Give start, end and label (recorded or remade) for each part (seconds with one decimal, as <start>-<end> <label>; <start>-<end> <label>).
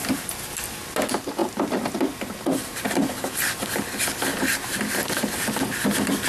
0.0-0.5 remade; 0.5-1.4 recorded; 1.4-1.9 remade; 1.9-2.6 recorded; 2.6-3.6 remade; 3.6-4.3 recorded; 4.3-5.1 remade; 5.1-6.3 recorded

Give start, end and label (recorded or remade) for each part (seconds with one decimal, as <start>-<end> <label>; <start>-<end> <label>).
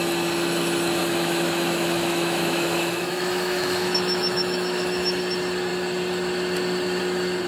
0.0-1.0 recorded; 1.0-5.2 remade; 5.2-7.5 recorded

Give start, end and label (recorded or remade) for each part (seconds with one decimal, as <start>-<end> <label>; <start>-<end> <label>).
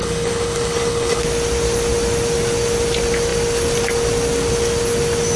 0.0-1.2 remade; 1.2-5.4 recorded